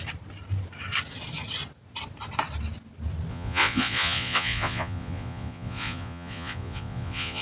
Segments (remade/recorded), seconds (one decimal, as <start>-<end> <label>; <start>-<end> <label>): 0.0-3.3 recorded; 3.3-7.4 remade